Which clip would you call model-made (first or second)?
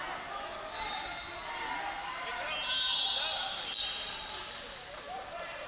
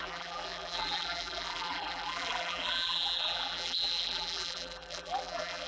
second